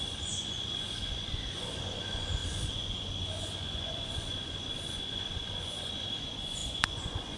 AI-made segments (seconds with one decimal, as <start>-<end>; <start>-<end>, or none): 0.0-7.4